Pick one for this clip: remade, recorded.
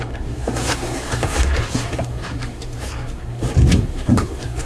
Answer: remade